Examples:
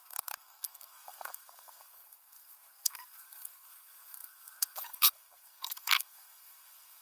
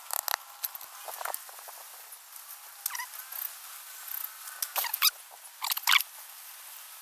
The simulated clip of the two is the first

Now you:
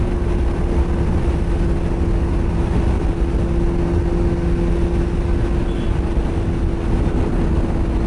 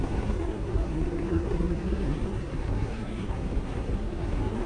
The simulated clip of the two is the second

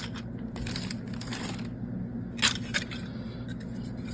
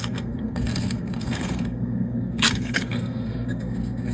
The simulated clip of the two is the second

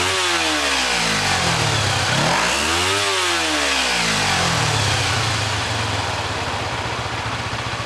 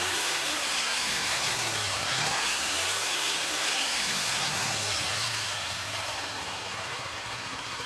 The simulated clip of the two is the second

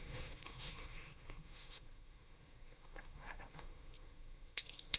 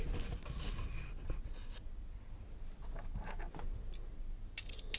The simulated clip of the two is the first